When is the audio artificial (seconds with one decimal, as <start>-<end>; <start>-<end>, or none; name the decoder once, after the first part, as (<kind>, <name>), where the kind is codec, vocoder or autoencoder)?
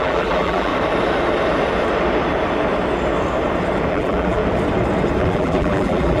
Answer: 0.0-0.7 (vocoder, BigVGAN v2); 3.9-4.4; 5.2-6.2